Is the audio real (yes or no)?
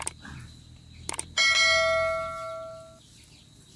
yes